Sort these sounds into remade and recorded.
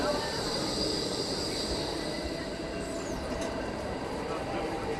remade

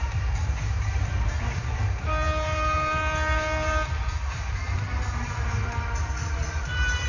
remade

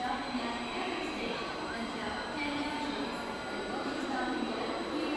remade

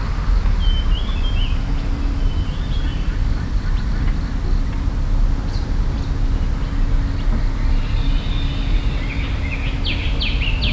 recorded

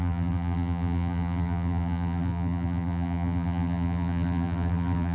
remade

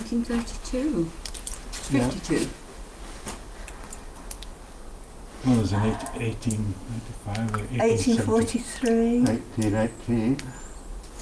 recorded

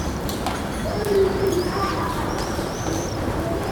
remade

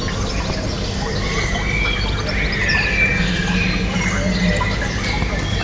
recorded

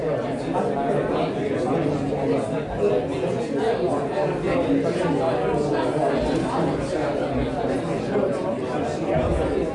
recorded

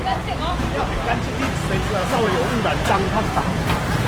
remade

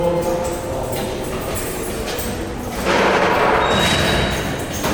recorded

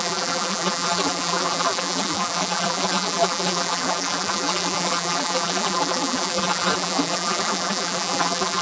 remade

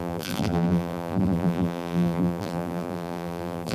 remade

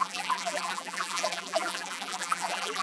remade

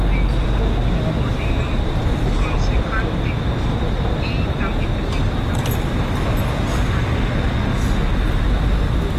recorded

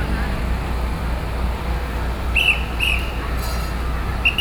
recorded